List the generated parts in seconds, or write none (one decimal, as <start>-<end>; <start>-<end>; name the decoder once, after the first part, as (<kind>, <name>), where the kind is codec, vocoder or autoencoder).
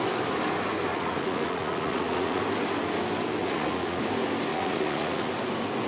0.9-2.4 (vocoder, Vocos); 3.4-4.0; 4.5-5.3